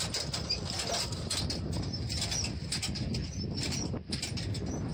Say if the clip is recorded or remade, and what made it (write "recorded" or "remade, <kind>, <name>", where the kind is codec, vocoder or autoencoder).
recorded